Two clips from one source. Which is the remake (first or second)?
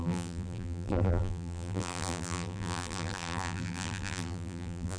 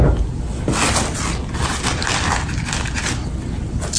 first